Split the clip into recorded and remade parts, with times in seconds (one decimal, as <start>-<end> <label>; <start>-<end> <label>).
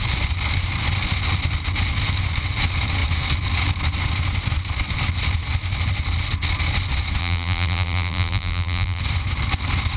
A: 0.0-7.2 recorded; 7.2-9.0 remade; 9.0-10.0 recorded